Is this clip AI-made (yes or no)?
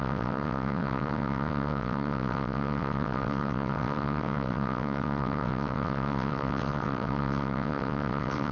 yes